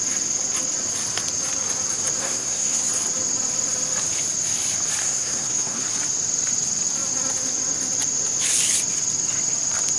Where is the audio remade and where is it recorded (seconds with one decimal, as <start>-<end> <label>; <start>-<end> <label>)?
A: 0.0-2.2 recorded; 2.2-2.9 remade; 2.9-5.0 recorded; 5.0-5.8 remade; 5.8-10.0 recorded